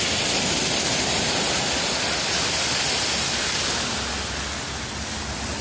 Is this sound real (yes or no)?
yes